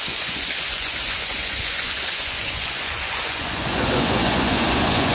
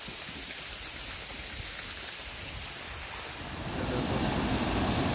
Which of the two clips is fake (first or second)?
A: first